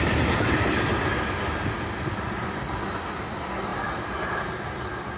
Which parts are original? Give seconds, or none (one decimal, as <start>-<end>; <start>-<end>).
0.0-5.2